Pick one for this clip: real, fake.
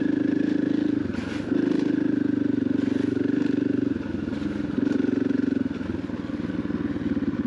real